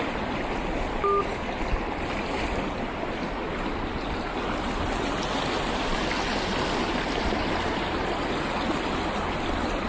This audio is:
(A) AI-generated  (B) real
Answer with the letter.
B